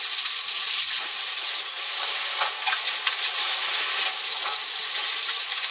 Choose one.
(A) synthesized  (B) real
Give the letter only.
B